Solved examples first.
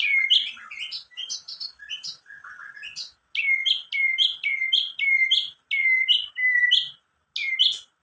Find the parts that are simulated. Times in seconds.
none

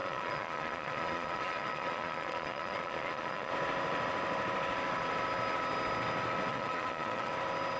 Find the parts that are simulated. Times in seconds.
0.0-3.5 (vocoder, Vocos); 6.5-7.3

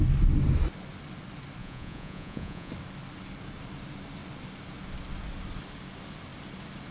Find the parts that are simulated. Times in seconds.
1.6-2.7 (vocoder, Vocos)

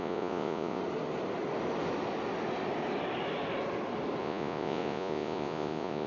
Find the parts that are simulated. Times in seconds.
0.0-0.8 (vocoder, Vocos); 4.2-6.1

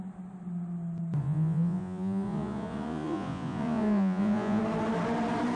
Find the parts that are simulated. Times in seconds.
1.2-4.6 (vocoder, Vocos)

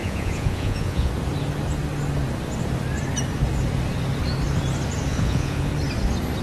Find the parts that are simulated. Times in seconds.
0.0-1.1 (vocoder, Vocos); 5.1-5.7